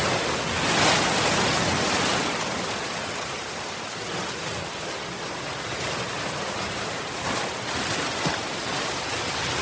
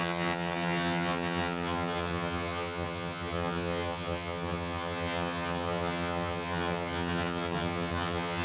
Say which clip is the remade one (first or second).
second